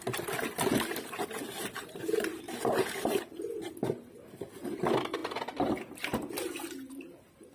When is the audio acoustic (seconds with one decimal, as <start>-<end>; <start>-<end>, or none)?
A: 0.0-7.5

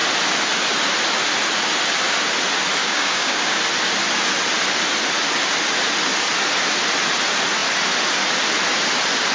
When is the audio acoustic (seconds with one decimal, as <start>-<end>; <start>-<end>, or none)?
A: 0.0-2.8; 3.6-9.3

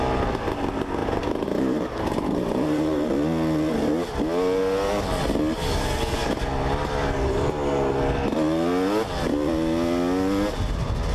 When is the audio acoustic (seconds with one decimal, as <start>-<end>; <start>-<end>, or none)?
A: 0.0-1.0; 3.1-11.1

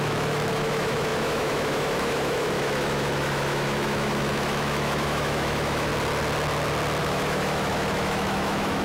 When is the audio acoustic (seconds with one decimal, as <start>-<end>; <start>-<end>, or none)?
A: 5.9-7.0

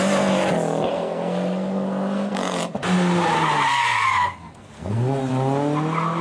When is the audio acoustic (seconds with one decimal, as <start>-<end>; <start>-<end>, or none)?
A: 0.0-0.9; 2.6-3.7; 5.3-6.2